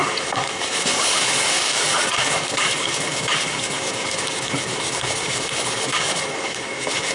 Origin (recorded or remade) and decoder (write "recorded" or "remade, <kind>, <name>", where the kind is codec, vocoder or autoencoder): remade, codec, DAC